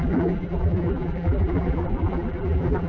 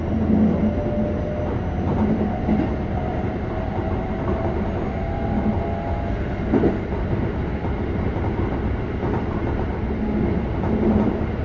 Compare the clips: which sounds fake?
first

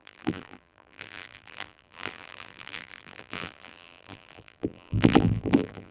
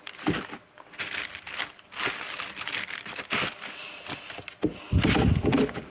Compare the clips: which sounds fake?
first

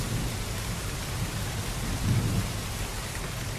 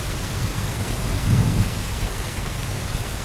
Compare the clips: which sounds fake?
second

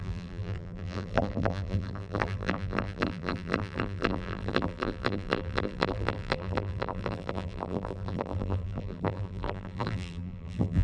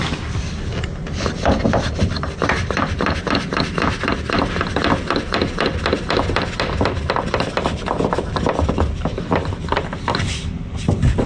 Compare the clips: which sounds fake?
first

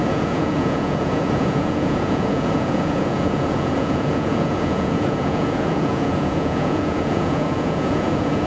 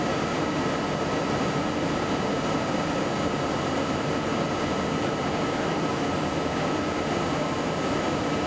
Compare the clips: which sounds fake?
first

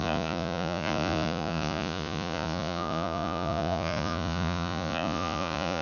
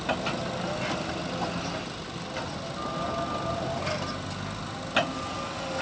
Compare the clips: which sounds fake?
first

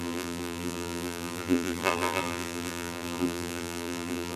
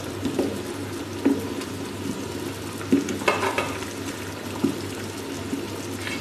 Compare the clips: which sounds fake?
first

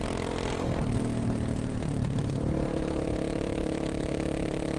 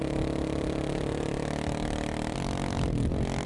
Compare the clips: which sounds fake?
first